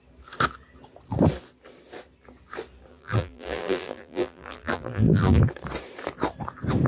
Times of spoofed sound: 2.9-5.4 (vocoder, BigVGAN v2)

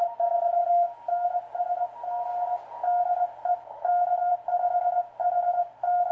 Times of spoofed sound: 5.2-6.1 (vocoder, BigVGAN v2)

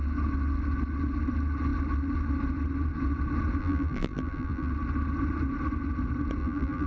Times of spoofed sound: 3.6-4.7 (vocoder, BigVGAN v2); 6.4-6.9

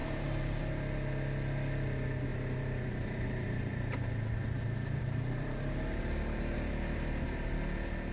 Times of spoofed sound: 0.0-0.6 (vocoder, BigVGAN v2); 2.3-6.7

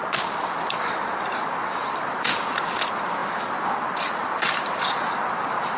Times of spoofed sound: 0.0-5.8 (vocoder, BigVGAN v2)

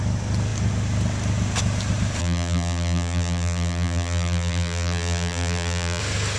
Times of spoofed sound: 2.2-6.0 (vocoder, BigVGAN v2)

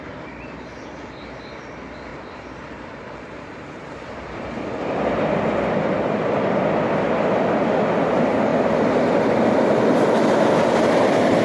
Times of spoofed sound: 2.1-3.9 (vocoder, BigVGAN v2)